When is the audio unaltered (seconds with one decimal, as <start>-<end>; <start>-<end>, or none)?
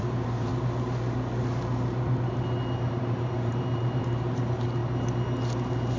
0.5-3.0; 4.8-6.0